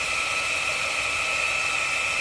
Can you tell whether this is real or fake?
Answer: real